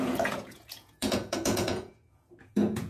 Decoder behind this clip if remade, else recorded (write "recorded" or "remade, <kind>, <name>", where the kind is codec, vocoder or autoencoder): remade, vocoder, Vocos